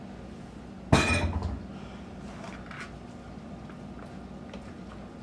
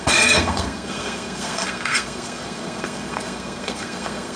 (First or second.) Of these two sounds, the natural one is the first